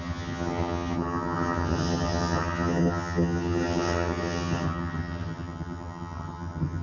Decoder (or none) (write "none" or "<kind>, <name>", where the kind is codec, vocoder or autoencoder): vocoder, HiFi-GAN